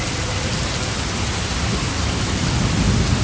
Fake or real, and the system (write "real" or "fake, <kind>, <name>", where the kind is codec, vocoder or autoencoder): real